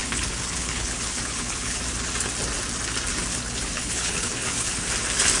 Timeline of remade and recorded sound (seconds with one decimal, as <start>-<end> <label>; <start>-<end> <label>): 0.0-1.8 remade; 1.8-3.3 recorded; 3.3-4.9 remade; 4.9-5.4 recorded

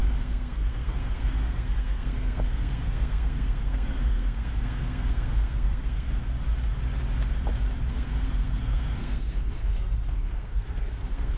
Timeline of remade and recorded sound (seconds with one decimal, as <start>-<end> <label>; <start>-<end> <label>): 0.0-6.2 remade; 6.2-7.9 recorded; 7.9-11.4 remade

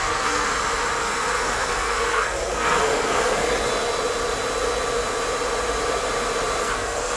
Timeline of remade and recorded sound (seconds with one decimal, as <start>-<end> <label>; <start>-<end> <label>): 0.0-0.5 remade; 0.5-1.0 recorded; 1.0-3.4 remade; 3.4-6.6 recorded; 6.6-7.2 remade

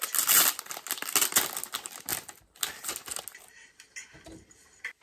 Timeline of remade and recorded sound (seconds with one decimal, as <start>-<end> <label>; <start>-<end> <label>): 0.0-5.0 recorded

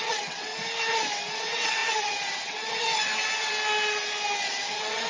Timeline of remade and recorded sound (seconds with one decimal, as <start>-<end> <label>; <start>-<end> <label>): 0.0-0.5 remade; 0.5-1.3 recorded; 1.3-3.1 remade; 3.1-4.4 recorded; 4.4-5.1 remade

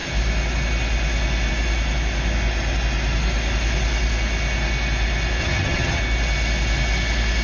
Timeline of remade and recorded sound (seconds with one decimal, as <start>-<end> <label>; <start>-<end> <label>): 0.0-5.4 recorded; 5.4-6.0 remade; 6.0-7.4 recorded

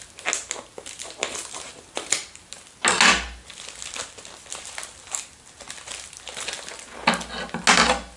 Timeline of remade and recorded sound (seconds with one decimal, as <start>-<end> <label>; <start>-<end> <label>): 0.0-8.2 recorded

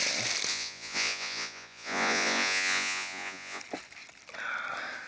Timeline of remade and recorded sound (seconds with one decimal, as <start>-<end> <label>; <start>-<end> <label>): 0.0-0.5 recorded; 0.5-3.6 remade; 3.6-5.1 recorded